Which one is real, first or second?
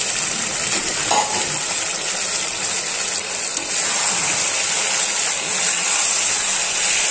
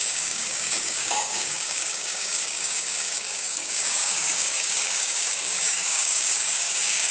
first